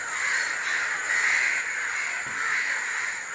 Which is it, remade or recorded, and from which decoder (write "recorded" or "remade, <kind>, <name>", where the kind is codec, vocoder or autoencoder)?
recorded